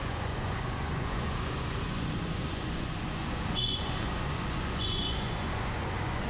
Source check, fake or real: fake